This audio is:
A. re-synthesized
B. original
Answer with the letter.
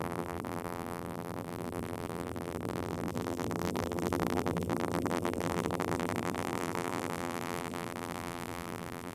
A